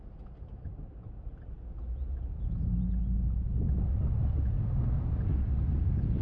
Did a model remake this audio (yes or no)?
no